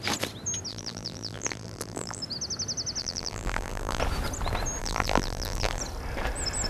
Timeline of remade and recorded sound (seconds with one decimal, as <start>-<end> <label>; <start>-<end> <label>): 0.0-0.7 recorded; 0.7-2.2 remade; 2.2-3.0 recorded; 3.0-4.0 remade; 4.0-4.8 recorded; 4.8-5.8 remade; 5.8-6.7 recorded